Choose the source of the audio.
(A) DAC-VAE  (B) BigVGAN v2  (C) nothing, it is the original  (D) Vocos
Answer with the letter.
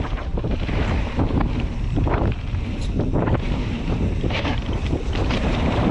B